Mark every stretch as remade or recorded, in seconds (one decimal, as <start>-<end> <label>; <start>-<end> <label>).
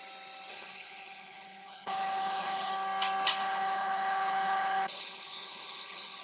0.0-0.5 recorded; 0.5-2.7 remade; 2.7-3.4 recorded; 3.4-6.2 remade